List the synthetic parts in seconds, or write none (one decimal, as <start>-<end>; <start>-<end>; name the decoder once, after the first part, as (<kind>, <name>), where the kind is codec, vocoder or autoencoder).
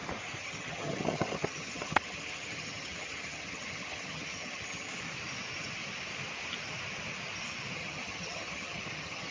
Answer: 0.4-4.9 (vocoder, HiFi-GAN); 7.8-9.3